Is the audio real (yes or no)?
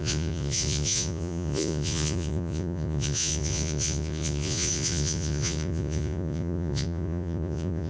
no